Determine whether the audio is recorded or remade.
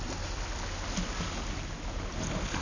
recorded